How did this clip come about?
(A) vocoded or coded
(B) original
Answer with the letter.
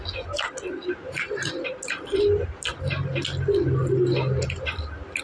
B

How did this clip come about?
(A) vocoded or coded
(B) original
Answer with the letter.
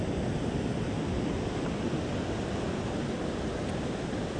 B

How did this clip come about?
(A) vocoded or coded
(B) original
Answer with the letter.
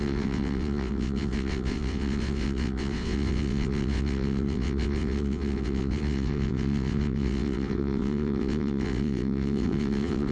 A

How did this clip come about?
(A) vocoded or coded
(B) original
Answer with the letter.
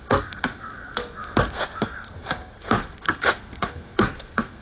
A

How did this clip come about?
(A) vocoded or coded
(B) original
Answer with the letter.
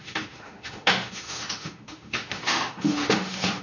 A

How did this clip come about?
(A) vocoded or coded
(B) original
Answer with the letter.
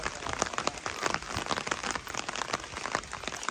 B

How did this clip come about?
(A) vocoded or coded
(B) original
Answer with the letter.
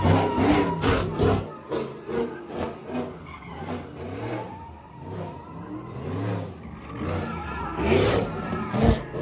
B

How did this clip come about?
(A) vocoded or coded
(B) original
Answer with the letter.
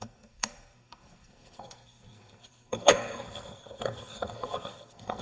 A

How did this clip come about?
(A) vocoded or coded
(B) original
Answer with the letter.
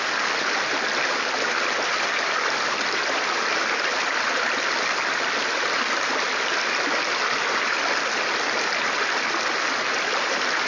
B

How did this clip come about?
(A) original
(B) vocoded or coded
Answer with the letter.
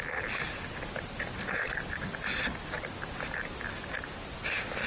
A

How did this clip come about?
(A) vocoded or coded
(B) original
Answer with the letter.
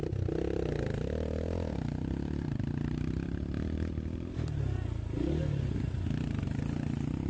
B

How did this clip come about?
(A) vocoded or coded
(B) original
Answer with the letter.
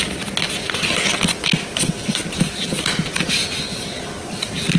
B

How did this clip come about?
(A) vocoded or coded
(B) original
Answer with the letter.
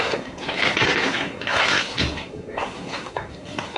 A